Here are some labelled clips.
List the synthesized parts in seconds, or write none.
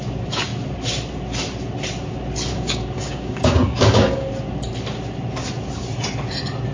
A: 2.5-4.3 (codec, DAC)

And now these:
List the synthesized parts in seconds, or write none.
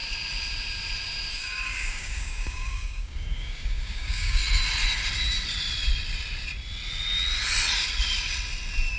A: 1.3-4.4 (codec, DAC)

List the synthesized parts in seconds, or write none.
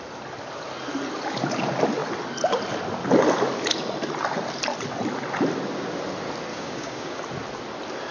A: 6.5-7.2 (codec, DAC)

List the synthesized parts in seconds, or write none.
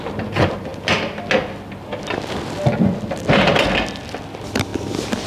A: none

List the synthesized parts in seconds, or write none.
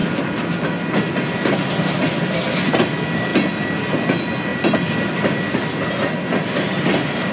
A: none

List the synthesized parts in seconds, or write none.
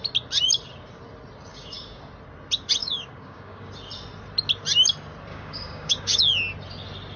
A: 1.5-2.0 (codec, DAC); 2.8-3.7; 5.3-6.2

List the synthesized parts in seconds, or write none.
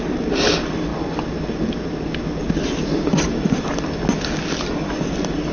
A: none